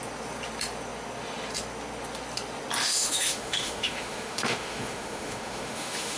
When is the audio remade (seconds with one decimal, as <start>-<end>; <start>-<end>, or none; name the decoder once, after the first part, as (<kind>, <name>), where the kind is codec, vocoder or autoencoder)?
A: 2.8-6.2 (autoencoder, DAC-VAE)